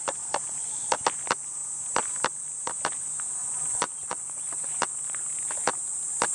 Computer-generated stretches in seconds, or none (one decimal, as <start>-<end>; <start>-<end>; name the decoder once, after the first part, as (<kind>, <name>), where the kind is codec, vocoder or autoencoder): 3.4-5.2 (vocoder, Vocos)